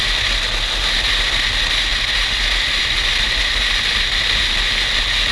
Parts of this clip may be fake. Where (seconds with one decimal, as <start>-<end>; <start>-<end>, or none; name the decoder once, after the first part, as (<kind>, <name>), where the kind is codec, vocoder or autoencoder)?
1.9-3.8 (vocoder, BigVGAN v2)